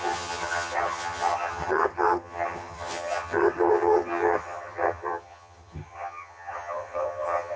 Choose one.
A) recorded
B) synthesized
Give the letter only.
B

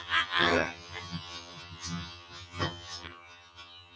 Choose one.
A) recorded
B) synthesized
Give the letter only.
B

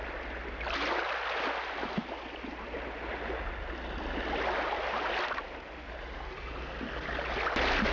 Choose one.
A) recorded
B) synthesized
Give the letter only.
A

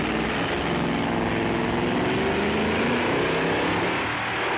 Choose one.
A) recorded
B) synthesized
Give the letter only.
A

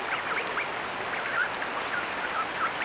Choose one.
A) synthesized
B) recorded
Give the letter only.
B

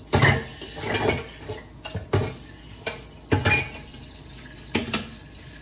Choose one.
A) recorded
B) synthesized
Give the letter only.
A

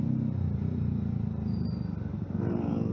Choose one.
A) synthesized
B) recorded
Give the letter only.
B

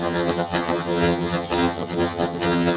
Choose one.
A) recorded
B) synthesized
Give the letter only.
B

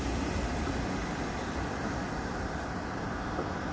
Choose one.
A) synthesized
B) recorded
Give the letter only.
B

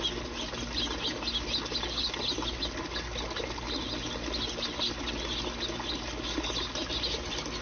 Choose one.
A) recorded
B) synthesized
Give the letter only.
A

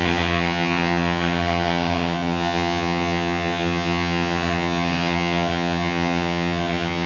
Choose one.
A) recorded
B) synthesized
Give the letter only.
B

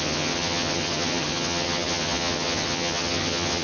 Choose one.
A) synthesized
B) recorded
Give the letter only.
A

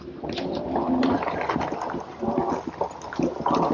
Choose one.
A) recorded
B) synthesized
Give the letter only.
A